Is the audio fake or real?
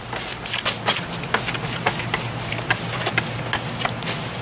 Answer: real